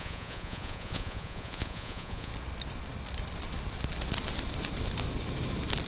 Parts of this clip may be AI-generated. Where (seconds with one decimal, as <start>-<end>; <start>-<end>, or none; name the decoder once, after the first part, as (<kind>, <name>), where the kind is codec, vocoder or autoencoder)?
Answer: 0.0-2.3 (vocoder, Vocos)